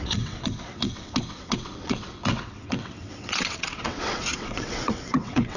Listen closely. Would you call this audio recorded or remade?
remade